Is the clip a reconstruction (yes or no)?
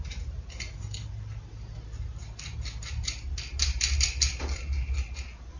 no